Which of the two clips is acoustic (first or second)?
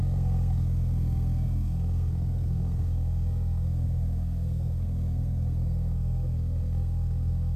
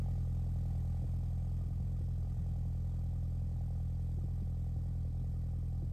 second